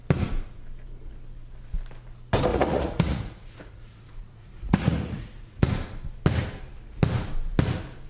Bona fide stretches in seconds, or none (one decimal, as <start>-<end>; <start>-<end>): 0.0-2.5; 5.7-8.1